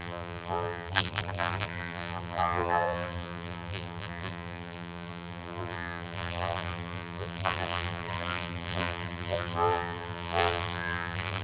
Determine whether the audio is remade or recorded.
remade